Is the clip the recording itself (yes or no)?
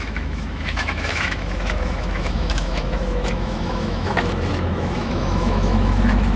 no